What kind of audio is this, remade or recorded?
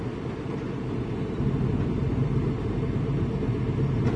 remade